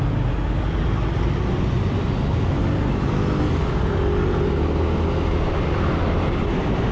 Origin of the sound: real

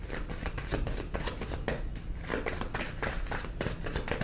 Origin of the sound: real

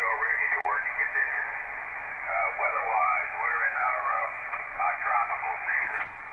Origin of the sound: fake